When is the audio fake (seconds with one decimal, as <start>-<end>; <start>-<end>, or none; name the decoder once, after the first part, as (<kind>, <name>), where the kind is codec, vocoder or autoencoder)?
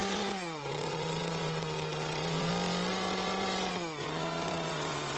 0.0-2.5 (vocoder, WaveNeXt); 2.9-5.2